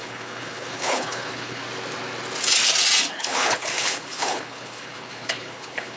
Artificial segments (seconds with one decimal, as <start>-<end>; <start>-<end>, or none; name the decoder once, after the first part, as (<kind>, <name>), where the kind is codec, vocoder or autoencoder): 0.0-1.6 (codec, HILCodec); 3.1-6.0

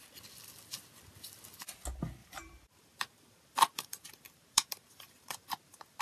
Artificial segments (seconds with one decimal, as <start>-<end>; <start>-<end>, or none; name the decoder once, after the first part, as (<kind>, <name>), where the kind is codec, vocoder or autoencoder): 2.2-6.0 (vocoder, BigVGAN v2)